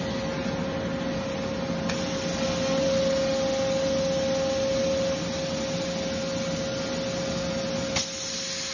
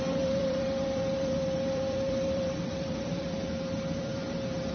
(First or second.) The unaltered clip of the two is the first